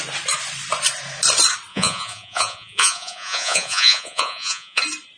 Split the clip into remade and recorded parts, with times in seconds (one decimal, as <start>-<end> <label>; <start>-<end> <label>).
0.0-1.7 recorded; 1.7-4.8 remade; 4.8-5.2 recorded